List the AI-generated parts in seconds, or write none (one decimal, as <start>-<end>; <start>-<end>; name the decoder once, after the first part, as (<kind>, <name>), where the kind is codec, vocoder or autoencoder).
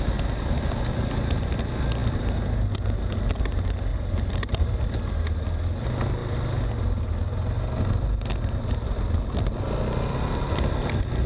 3.9-4.8 (vocoder, BigVGAN v2)